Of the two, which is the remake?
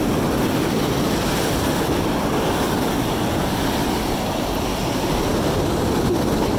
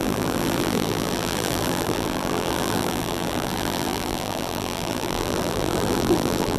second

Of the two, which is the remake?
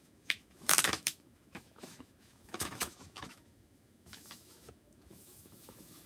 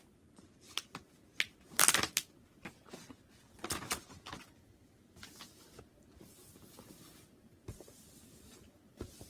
first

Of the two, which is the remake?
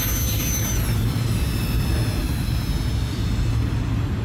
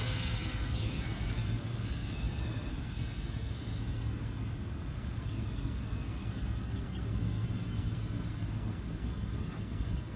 second